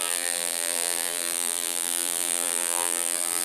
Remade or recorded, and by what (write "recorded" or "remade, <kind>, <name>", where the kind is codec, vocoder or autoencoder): remade, vocoder, BigVGAN v2